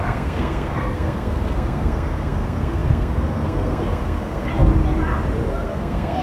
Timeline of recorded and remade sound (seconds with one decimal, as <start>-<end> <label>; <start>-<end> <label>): 0.0-4.5 remade; 4.5-5.5 recorded; 5.5-6.2 remade

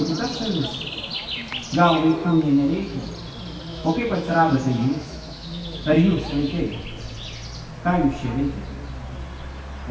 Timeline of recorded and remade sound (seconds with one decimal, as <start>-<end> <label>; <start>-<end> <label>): 0.0-2.2 recorded; 2.2-3.1 remade; 3.1-3.7 recorded; 3.7-6.6 remade; 6.6-9.9 recorded

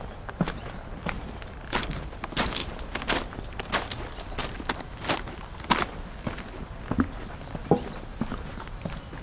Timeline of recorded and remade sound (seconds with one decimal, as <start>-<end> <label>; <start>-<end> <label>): 0.0-9.2 recorded

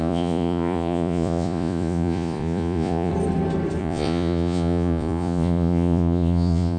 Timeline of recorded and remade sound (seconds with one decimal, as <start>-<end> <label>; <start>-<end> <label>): 0.0-3.1 remade; 3.1-3.8 recorded; 3.8-6.8 remade

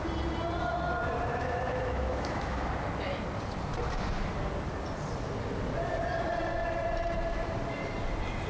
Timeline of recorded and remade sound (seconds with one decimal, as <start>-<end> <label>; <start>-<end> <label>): 0.0-1.3 recorded; 1.3-2.7 remade; 2.7-8.5 recorded

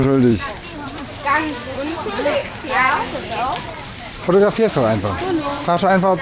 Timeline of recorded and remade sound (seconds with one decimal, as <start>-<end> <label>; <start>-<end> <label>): 0.0-1.0 remade; 1.0-2.4 recorded; 2.4-4.7 remade; 4.7-6.2 recorded